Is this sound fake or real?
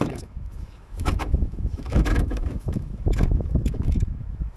fake